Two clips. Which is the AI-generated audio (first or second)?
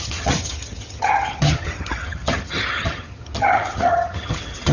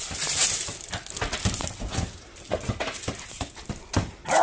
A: first